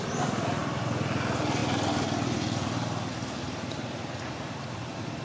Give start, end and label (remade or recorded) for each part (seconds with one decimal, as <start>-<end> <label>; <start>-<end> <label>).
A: 0.0-5.2 recorded